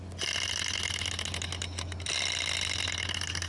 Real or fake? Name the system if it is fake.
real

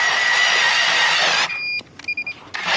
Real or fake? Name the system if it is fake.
real